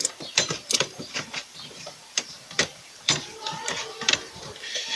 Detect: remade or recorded remade